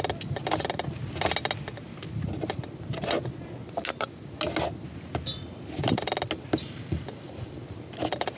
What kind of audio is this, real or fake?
real